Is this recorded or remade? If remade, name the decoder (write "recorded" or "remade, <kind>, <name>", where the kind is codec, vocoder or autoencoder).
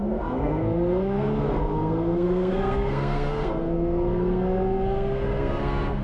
remade, codec, SNAC